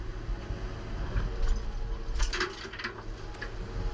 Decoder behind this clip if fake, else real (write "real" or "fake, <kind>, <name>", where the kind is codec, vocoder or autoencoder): real